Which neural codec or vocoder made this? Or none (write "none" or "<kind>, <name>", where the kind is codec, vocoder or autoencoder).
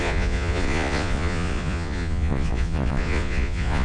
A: vocoder, Vocos